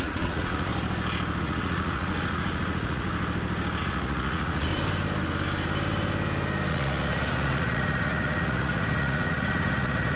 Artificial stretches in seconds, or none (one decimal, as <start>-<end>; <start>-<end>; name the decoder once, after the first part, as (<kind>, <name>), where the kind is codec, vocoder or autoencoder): 0.0-0.7 (vocoder, Vocos); 1.4-3.1; 3.8-4.7; 6.7-10.2